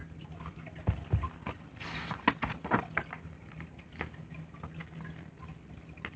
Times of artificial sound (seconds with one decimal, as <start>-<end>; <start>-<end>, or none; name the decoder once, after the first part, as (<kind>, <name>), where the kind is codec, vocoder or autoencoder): none